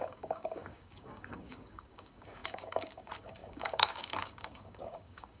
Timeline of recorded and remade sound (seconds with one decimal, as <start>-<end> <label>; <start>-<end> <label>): 0.0-5.4 remade

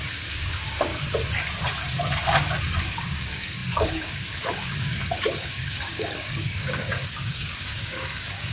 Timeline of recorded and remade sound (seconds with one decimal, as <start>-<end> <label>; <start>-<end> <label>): 0.0-0.9 remade; 0.9-2.8 recorded; 2.8-8.5 remade